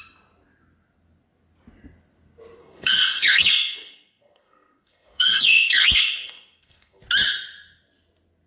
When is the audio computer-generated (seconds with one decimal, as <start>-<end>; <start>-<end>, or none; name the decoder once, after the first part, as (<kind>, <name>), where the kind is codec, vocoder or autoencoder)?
2.6-7.0 (codec, SNAC)